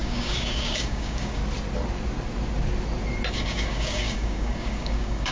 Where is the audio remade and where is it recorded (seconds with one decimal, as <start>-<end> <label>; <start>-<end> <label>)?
0.0-1.4 remade; 1.4-3.3 recorded; 3.3-5.3 remade